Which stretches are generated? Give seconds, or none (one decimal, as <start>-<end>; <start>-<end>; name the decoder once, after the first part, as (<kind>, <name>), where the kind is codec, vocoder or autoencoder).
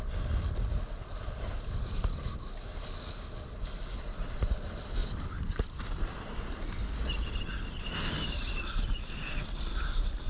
1.0-2.0 (vocoder, BigVGAN v2); 3.9-4.5; 5.0-6.4